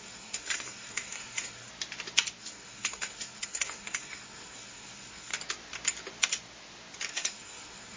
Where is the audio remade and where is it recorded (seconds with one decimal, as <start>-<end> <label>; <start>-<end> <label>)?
0.0-1.7 remade; 1.7-2.4 recorded; 2.4-5.3 remade; 5.3-7.1 recorded; 7.1-8.0 remade